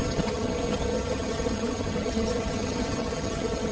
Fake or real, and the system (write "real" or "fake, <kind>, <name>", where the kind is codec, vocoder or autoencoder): fake, vocoder, HiFi-GAN